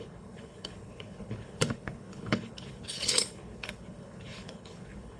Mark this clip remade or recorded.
remade